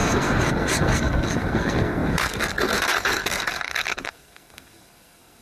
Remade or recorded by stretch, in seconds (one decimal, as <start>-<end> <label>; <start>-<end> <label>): 0.0-5.4 remade